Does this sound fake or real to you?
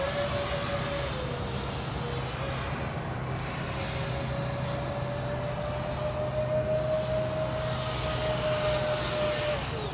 real